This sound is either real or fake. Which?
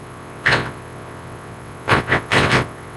fake